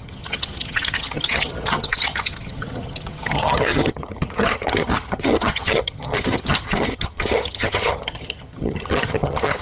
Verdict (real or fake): fake